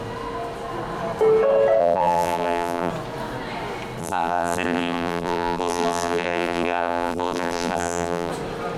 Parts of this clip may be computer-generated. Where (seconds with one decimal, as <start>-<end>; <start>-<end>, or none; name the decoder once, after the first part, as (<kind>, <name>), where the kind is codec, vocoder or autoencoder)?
1.8-2.9 (vocoder, BigVGAN v2); 4.0-8.3